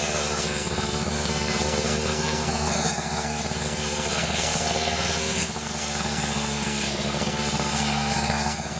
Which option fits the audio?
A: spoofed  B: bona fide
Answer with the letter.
A